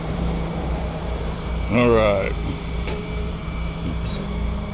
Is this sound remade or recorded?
remade